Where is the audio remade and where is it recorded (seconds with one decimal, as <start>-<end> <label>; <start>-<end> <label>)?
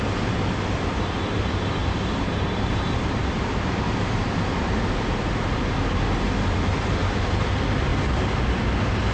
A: 0.0-1.8 recorded; 1.8-5.3 remade; 5.3-7.0 recorded; 7.0-7.5 remade; 7.5-9.1 recorded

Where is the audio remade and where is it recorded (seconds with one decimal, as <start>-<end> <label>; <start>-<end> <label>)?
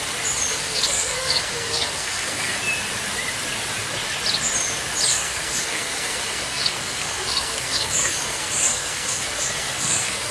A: 0.0-0.5 recorded; 0.5-2.6 remade; 2.6-5.1 recorded; 5.1-10.3 remade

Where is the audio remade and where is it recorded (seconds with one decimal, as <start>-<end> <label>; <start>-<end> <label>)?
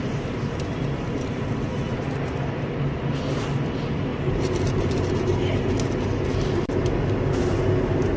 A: 0.0-4.1 recorded; 4.1-5.7 remade; 5.7-8.2 recorded